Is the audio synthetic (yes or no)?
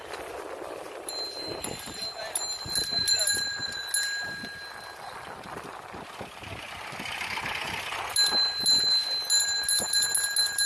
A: no